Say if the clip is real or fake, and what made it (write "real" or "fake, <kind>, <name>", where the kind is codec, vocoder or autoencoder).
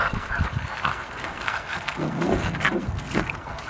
fake, codec, SNAC